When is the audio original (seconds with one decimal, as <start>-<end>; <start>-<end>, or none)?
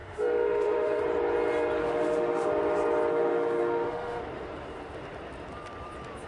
1.0-1.8; 2.5-3.1; 4.2-6.3